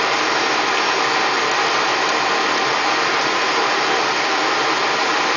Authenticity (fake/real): real